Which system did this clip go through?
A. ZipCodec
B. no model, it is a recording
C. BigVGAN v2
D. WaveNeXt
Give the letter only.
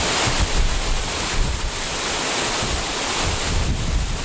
B